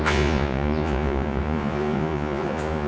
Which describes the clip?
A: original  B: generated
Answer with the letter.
B